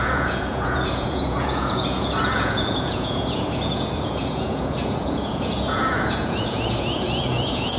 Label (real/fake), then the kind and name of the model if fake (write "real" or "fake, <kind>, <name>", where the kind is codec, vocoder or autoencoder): fake, vocoder, Vocos